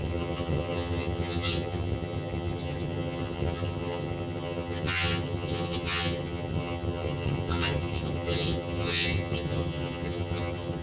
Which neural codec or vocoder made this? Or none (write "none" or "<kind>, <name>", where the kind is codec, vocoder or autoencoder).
vocoder, HiFi-GAN